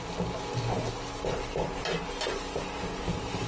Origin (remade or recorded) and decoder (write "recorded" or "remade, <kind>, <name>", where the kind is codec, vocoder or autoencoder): recorded